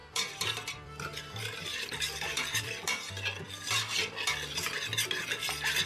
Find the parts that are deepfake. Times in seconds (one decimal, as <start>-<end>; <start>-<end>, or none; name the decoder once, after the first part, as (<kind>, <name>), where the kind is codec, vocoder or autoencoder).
0.0-3.1 (vocoder, BigVGAN v2)